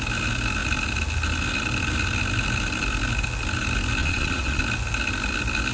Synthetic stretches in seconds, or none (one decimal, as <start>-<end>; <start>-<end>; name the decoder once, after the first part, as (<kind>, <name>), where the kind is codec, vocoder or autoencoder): 4.0-4.6 (vocoder, Vocos)